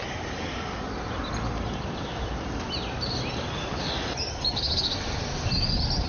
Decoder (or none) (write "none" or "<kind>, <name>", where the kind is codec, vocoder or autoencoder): none